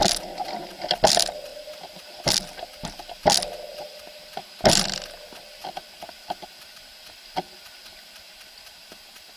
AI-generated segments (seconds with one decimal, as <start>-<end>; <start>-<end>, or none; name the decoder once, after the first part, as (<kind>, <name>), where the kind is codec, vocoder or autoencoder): none

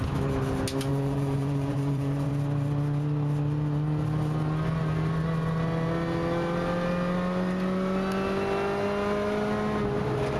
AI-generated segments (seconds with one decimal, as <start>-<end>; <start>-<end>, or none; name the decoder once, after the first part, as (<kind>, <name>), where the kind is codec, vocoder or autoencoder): 0.9-2.3 (vocoder, Vocos)